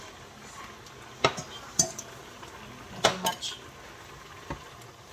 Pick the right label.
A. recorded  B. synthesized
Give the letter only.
A